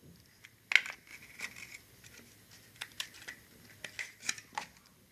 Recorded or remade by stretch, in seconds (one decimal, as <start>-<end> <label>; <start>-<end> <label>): 0.0-5.1 recorded